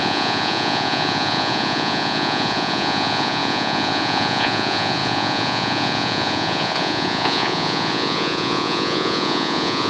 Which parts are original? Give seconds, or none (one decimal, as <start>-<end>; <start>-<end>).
none